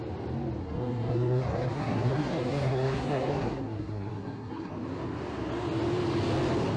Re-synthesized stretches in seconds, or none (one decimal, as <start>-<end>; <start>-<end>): 0.6-4.7